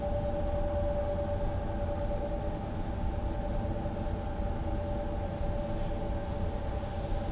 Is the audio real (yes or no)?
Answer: yes